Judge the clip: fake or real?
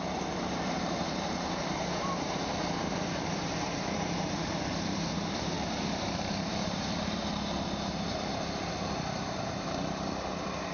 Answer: fake